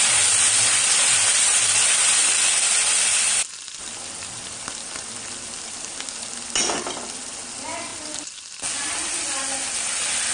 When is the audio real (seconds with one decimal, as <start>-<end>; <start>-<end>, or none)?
0.0-10.3